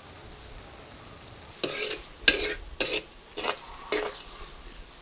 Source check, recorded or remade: recorded